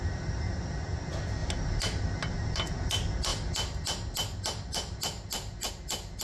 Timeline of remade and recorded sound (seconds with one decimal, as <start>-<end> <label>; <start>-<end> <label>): 0.0-6.2 recorded